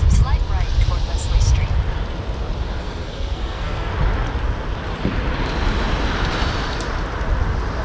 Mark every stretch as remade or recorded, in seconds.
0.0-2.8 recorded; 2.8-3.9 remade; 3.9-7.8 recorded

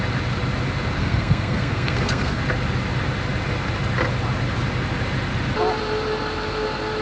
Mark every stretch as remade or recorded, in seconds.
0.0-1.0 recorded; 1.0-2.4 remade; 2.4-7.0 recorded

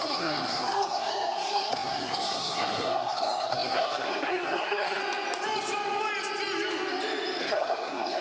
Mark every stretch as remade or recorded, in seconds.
0.0-5.0 remade; 5.0-7.4 recorded; 7.4-8.2 remade